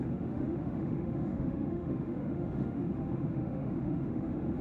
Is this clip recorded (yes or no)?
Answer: no